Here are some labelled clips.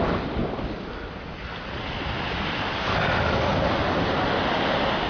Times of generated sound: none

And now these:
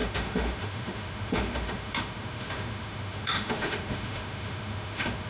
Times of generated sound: 0.0-5.3 (autoencoder, DAC-VAE)

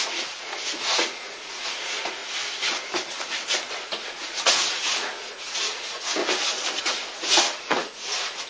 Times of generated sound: 0.0-2.2 (vocoder, Vocos); 3.7-6.2; 6.8-8.5

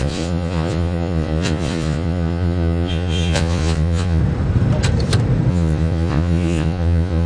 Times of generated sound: 0.0-4.2 (vocoder, Vocos); 5.5-7.3

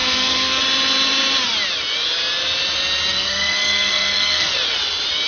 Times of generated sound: 0.0-0.6 (codec, SNAC); 3.1-4.5